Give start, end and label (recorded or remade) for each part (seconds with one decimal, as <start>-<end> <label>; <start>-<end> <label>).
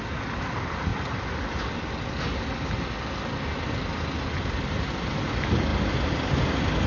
0.0-6.9 recorded